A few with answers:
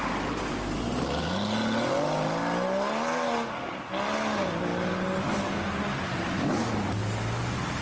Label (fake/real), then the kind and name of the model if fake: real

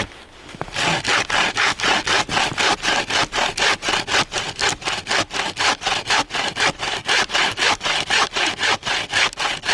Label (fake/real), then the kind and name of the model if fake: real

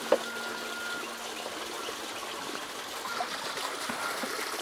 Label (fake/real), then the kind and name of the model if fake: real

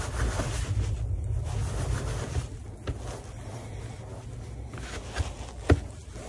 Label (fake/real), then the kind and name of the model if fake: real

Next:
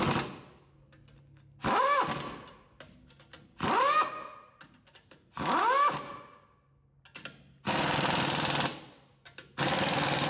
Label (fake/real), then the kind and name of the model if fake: real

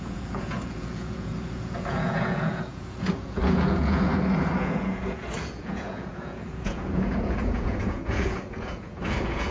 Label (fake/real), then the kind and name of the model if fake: fake, vocoder, Vocos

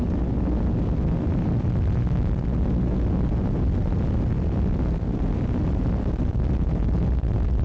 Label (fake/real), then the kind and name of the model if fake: real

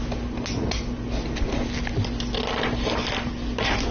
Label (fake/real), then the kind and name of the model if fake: real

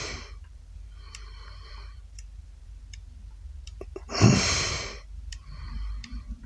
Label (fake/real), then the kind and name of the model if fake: fake, vocoder, BigVGAN v2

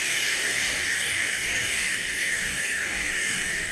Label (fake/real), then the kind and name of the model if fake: fake, codec, DAC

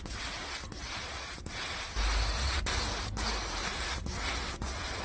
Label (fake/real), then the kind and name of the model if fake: real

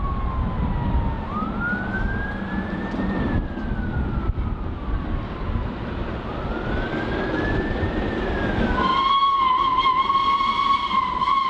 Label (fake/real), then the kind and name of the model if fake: real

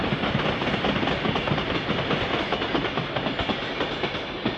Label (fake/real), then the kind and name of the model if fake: real